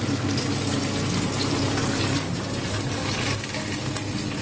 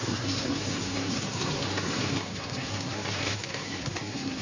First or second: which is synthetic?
second